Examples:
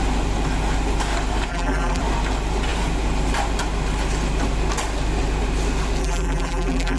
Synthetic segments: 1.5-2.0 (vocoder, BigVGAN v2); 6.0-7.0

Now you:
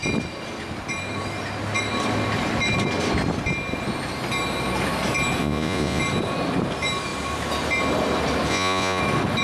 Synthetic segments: 5.4-6.0 (vocoder, Vocos); 8.5-9.0

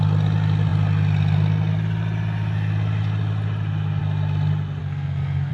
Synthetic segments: 4.8-5.5 (codec, SNAC)

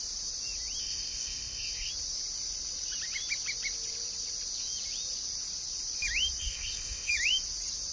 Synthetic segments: 0.8-1.9 (codec, ZipCodec); 6.4-7.1

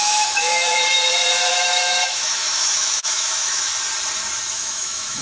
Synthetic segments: 0.0-0.8 (autoencoder, DAC-VAE); 1.5-3.7; 4.5-5.2

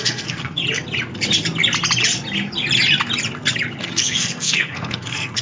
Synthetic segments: 0.0-0.6 (codec, SNAC); 3.8-5.4

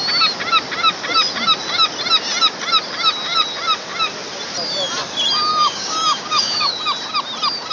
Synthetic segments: 5.5-6.8 (codec, DAC)